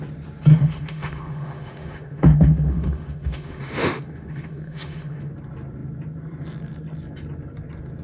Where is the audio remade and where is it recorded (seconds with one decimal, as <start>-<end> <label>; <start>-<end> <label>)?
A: 0.0-0.5 recorded; 0.5-5.3 remade; 5.3-8.0 recorded